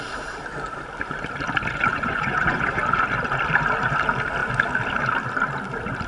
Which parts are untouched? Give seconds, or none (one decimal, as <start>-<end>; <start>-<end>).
0.0-1.9; 2.8-6.1